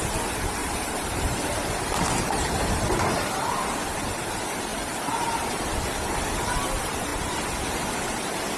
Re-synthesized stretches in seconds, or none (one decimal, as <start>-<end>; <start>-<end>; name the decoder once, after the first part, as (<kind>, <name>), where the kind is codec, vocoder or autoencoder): 0.6-3.6 (vocoder, BigVGAN v2); 4.7-5.8